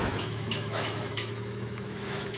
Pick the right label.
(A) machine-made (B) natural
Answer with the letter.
A